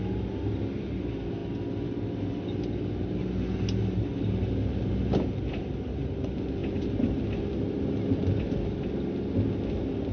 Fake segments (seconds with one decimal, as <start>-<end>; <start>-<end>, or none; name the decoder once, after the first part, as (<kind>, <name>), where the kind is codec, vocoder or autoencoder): none